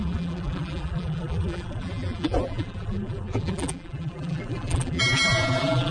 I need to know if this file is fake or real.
fake